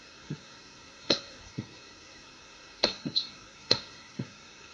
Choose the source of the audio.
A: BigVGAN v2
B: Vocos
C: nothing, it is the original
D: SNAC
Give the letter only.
D